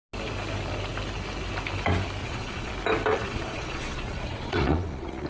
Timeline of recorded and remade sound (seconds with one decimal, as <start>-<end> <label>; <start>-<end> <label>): 0.0-2.2 recorded; 2.2-2.7 remade; 2.7-3.1 recorded; 3.1-5.3 remade

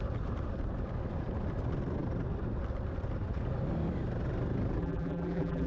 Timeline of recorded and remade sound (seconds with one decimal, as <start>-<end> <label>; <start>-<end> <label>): 0.0-4.8 recorded; 4.8-5.7 remade

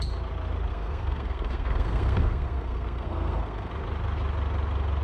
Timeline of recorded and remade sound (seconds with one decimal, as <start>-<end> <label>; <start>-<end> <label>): 0.0-0.7 recorded; 0.7-3.7 remade; 3.7-5.0 recorded